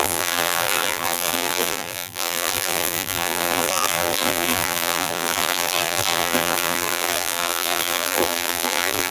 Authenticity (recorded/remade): remade